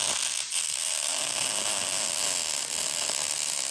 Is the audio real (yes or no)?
yes